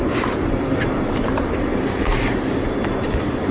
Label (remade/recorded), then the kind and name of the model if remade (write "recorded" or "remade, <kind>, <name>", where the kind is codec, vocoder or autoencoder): remade, vocoder, BigVGAN v2